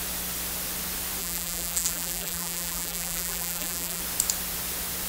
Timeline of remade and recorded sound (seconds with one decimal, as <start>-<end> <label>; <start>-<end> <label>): 0.0-1.2 recorded; 1.2-4.0 remade; 4.0-5.1 recorded